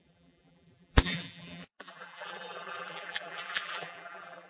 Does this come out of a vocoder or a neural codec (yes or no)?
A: yes